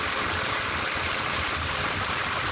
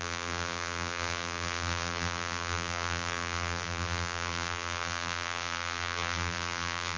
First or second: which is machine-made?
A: second